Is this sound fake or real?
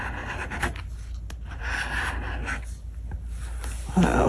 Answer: real